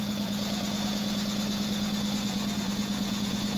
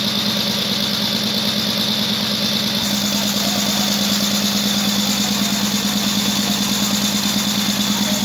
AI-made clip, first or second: first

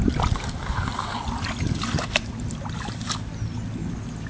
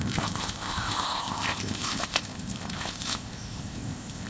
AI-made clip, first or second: second